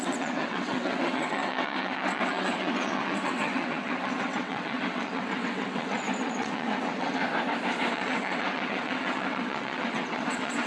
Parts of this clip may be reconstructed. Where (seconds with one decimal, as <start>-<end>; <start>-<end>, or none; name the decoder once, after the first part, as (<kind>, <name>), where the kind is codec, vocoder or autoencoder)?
0.0-7.2 (vocoder, WaveNeXt); 7.9-10.7